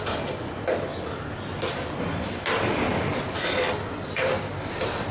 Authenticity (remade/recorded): recorded